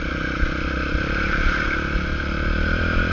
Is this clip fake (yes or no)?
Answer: yes